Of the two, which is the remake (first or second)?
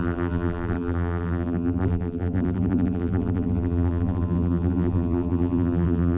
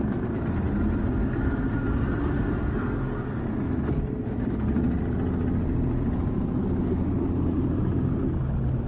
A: first